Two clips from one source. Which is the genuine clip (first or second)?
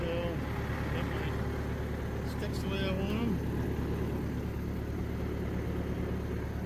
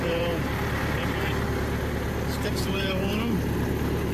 first